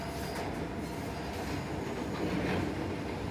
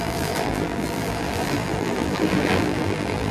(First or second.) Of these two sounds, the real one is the first